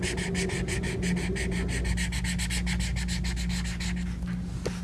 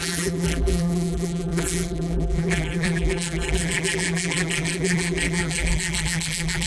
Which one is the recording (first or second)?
first